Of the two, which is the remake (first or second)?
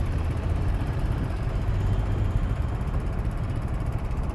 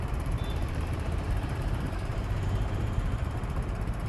second